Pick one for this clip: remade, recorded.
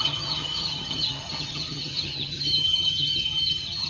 remade